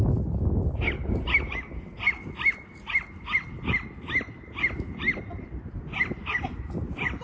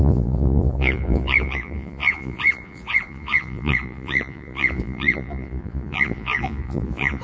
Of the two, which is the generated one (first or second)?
second